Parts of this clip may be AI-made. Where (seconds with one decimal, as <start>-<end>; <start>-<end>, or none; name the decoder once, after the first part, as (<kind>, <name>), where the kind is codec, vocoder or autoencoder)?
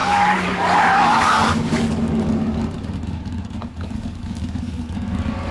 0.0-5.5 (codec, DAC)